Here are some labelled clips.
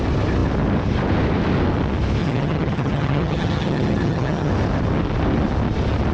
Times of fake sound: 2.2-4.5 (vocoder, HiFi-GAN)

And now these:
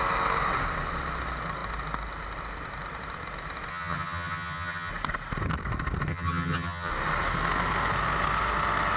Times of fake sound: 3.7-4.9 (vocoder, HiFi-GAN); 6.1-6.9

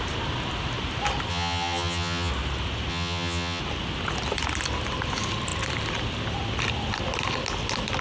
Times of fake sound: 1.3-2.3 (vocoder, HiFi-GAN); 2.9-3.6